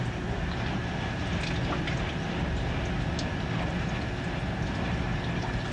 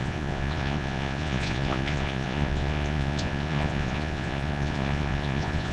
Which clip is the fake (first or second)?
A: second